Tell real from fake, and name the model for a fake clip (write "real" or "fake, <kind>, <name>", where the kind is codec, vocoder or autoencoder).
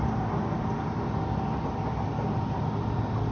real